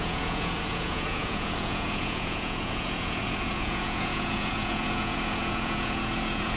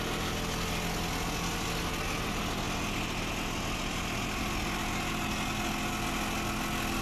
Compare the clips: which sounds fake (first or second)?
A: first